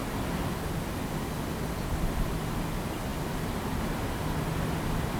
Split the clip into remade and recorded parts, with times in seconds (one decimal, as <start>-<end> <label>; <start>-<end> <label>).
0.0-5.2 recorded